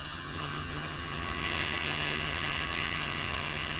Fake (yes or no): yes